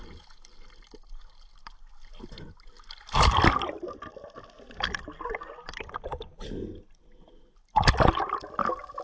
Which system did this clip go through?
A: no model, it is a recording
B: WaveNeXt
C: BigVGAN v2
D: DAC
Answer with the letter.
A